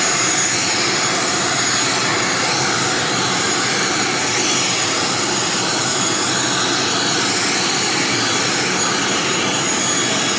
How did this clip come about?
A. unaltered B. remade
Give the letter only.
A